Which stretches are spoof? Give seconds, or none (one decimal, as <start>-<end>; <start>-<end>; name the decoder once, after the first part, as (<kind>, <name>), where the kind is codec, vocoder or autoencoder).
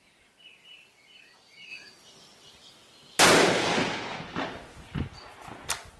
none